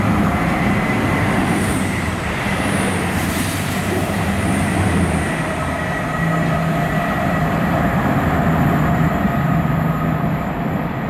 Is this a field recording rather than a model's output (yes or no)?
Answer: no